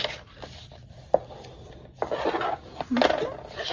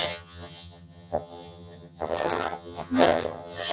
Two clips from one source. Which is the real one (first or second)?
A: first